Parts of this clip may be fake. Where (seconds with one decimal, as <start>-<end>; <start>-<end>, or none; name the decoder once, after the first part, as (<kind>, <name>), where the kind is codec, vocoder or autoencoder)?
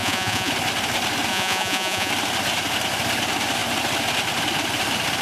0.0-0.5 (vocoder, Vocos); 1.3-2.1